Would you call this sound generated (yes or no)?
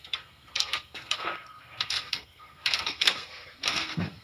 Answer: yes